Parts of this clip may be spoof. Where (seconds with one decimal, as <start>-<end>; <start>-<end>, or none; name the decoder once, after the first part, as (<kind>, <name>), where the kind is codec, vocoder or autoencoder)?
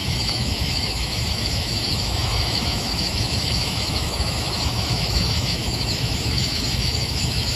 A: 0.0-7.6 (autoencoder, DAC-VAE)